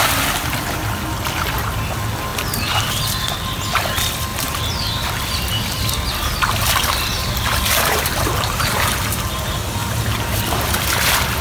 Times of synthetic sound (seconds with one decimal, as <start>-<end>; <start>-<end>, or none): 4.3-5.1; 7.1-9.0; 9.8-10.4